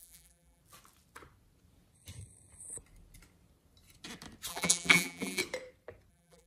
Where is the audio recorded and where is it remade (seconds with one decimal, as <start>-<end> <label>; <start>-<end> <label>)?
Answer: 0.0-0.6 remade; 0.6-4.5 recorded; 4.5-5.4 remade; 5.4-6.1 recorded; 6.1-6.5 remade